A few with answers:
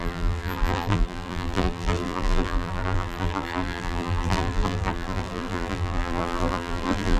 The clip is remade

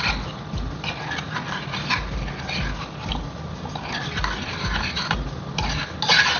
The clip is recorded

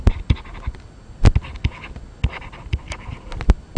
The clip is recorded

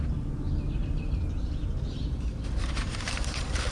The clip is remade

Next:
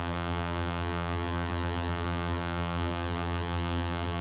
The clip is remade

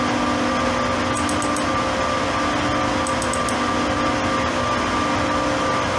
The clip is recorded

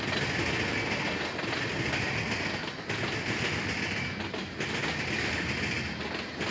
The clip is recorded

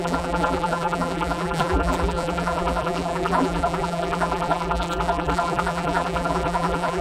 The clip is remade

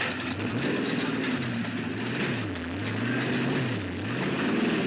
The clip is recorded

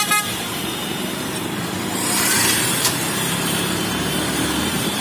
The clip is remade